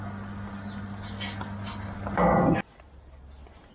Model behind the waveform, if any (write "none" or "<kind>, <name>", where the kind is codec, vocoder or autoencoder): none